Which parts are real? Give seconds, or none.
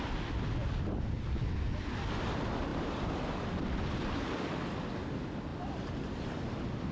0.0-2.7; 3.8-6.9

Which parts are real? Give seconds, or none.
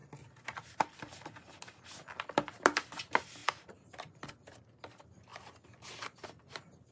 0.0-3.4; 4.2-6.9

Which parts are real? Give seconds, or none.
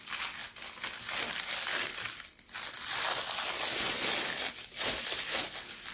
0.0-0.4; 3.9-4.6; 5.4-5.9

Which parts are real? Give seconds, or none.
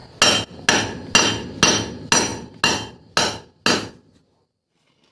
0.0-5.1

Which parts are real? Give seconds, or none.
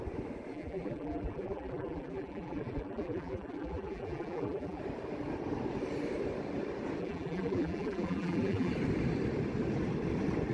0.0-0.5; 4.8-7.0; 8.7-10.5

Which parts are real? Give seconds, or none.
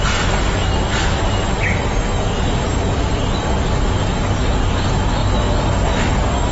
0.0-6.5